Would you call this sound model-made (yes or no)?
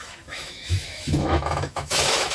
yes